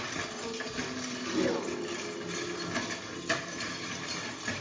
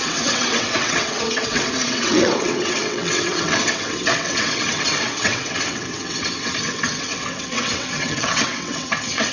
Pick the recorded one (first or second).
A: first